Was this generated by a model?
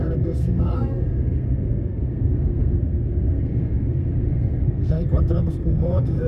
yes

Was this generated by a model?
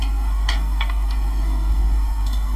yes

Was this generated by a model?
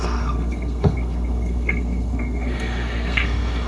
yes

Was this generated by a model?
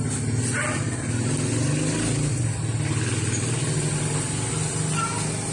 no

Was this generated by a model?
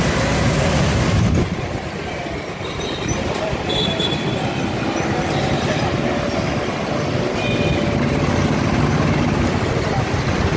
no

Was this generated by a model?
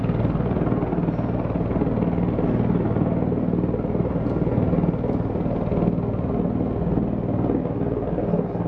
no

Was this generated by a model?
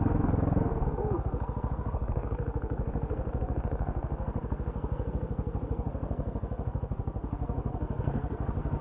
yes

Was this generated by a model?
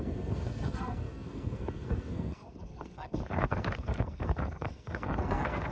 yes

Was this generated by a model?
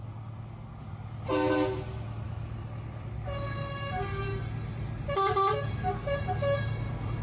no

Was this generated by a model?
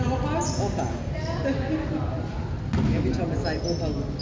no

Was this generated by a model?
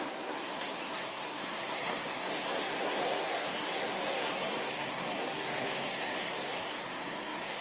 yes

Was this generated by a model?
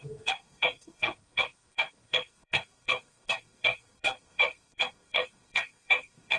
yes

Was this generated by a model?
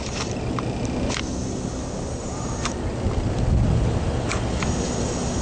no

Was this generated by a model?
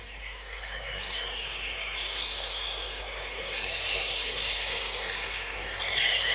yes